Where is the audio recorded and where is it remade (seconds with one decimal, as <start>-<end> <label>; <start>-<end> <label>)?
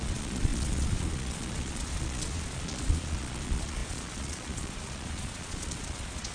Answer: 0.0-6.3 remade